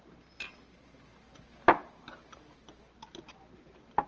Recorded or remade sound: recorded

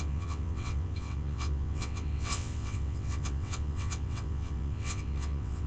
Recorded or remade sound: remade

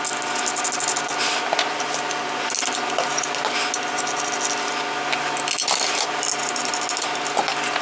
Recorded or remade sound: recorded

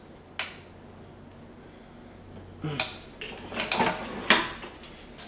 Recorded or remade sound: recorded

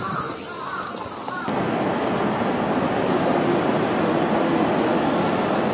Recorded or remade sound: recorded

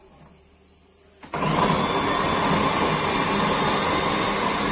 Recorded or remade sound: recorded